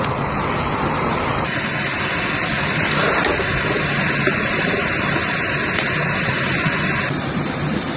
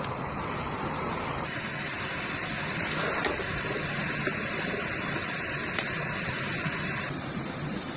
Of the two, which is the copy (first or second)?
second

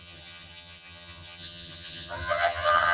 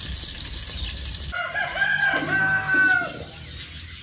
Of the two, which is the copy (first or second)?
first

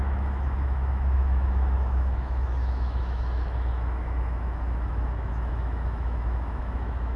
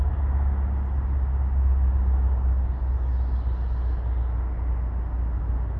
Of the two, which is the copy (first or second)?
first